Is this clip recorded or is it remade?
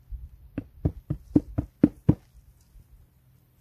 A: recorded